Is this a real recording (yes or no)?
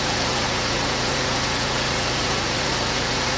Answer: no